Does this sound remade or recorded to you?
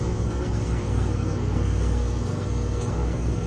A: remade